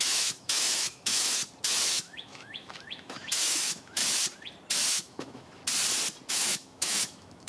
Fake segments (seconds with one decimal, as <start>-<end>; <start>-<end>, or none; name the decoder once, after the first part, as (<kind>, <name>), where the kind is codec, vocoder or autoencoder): 0.0-1.4 (autoencoder, DAC-VAE); 1.9-4.0; 4.9-5.6; 6.3-7.5